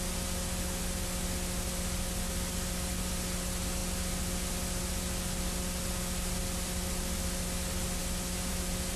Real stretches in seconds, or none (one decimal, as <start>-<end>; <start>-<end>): 0.0-9.0